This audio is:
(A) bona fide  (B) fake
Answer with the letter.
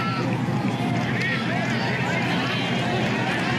A